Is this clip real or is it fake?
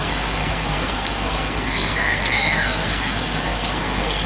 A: fake